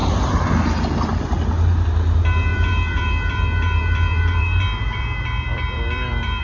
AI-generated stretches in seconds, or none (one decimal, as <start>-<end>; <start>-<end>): 0.0-0.6; 2.5-6.4